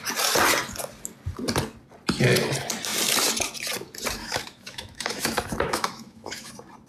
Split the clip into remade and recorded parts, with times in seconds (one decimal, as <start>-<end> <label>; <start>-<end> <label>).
0.0-4.2 recorded; 4.2-6.5 remade; 6.5-6.9 recorded